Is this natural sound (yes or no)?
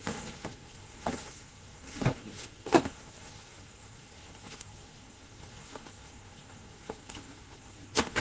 no